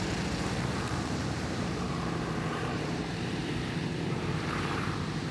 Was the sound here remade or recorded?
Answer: remade